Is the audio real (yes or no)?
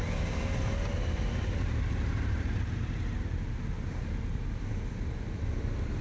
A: yes